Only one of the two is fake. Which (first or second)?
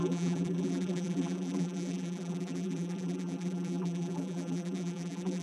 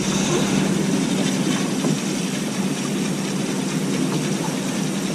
first